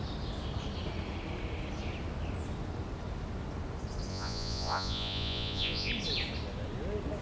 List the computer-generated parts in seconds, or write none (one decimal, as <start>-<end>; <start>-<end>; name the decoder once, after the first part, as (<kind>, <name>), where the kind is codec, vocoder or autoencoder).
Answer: 4.1-5.9 (vocoder, Vocos)